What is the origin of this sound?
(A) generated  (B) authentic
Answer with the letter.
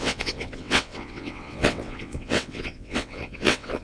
A